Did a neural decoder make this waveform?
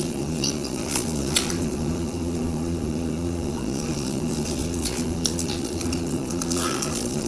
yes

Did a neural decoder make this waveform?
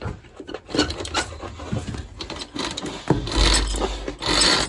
no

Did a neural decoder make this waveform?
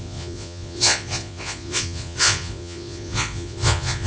yes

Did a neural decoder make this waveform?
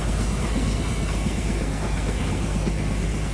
yes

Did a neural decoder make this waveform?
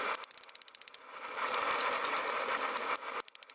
no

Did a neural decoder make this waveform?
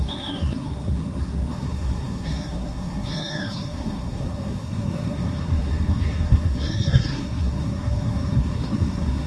yes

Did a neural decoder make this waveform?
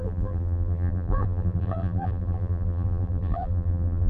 yes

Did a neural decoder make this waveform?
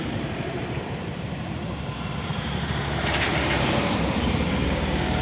yes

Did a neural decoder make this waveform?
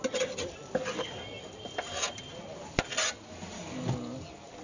no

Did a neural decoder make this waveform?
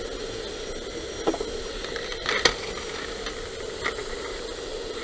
no